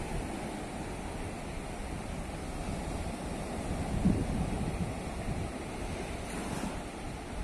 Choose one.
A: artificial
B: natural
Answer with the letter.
B